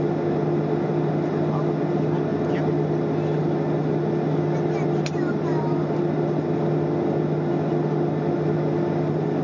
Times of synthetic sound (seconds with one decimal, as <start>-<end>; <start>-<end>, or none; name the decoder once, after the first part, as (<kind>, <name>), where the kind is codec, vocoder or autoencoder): none